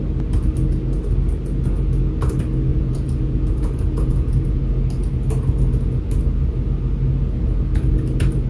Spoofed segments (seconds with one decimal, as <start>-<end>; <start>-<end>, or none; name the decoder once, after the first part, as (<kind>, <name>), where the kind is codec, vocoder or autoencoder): 2.7-4.6 (vocoder, Vocos)